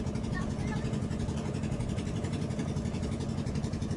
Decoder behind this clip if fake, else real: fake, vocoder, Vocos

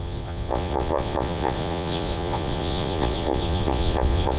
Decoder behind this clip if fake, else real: fake, vocoder, Vocos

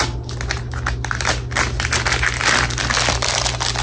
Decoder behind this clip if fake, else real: real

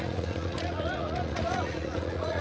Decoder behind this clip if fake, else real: fake, vocoder, Vocos